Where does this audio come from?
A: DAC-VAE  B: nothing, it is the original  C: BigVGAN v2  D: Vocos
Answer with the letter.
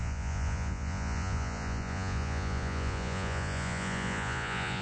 D